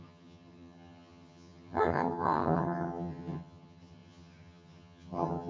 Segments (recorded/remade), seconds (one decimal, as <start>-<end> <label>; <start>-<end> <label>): 0.0-5.5 remade